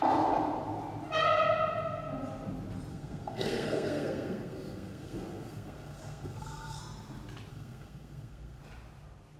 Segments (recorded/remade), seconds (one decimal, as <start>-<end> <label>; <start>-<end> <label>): 0.0-2.9 recorded; 2.9-6.8 remade; 6.8-7.5 recorded; 7.5-8.6 remade; 8.6-9.4 recorded

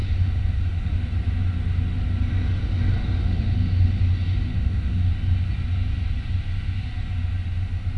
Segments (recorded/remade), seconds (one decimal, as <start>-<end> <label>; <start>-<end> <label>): 0.0-0.9 remade; 0.9-3.2 recorded; 3.2-4.0 remade; 4.0-4.5 recorded; 4.5-5.1 remade; 5.1-8.0 recorded

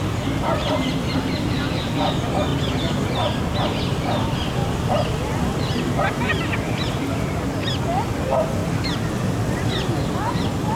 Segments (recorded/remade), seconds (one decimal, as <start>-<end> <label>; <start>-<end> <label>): 0.0-0.6 recorded; 0.6-2.1 remade; 2.1-4.6 recorded; 4.6-5.6 remade; 5.6-10.8 recorded

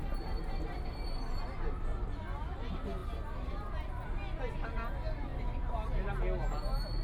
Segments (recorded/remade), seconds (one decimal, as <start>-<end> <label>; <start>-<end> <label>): 0.0-5.3 recorded; 5.3-6.1 remade; 6.1-7.0 recorded